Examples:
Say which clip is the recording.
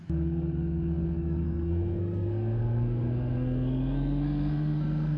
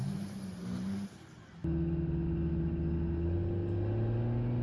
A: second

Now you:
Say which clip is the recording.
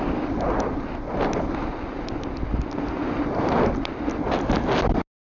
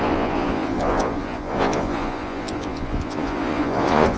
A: first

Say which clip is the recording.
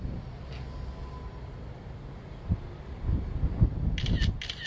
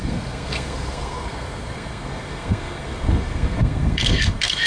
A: first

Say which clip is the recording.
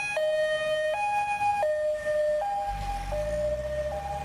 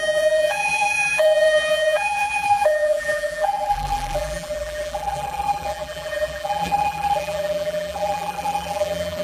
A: first